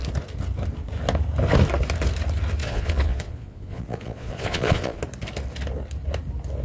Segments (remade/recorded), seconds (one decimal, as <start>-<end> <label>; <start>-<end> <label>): 0.0-2.6 recorded; 2.6-5.0 remade; 5.0-6.6 recorded